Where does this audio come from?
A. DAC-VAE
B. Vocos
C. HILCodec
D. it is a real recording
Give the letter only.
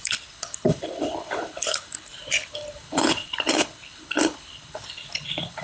C